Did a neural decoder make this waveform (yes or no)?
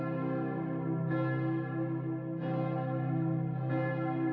no